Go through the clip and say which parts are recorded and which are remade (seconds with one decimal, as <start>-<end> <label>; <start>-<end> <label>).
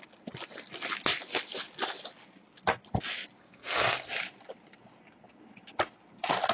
0.0-3.4 recorded; 3.4-4.1 remade; 4.1-6.5 recorded